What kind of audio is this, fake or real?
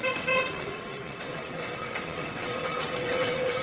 fake